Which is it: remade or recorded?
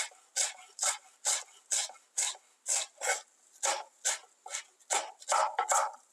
recorded